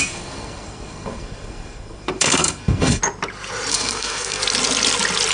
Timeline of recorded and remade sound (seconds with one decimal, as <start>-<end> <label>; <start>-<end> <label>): 0.0-3.0 remade; 3.0-3.7 recorded; 3.7-4.4 remade; 4.4-5.3 recorded